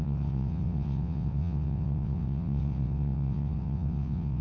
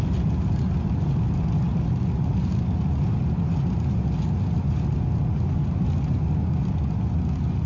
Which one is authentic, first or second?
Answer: second